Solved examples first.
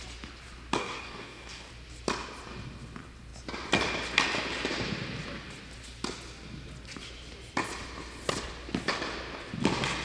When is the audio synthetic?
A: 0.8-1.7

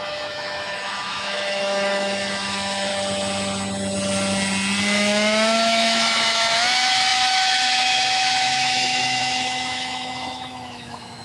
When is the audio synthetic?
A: 0.0-2.9; 4.8-11.2

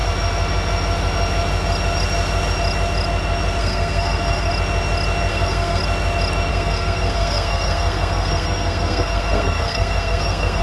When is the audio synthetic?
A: 3.6-4.5; 5.3-5.8; 6.5-10.6

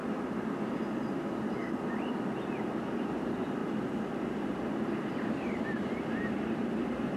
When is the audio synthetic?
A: 1.8-7.2